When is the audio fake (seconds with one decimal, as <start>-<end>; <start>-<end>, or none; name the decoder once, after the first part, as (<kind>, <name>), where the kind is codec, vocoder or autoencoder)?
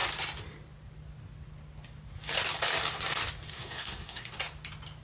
3.5-4.3 (codec, SNAC)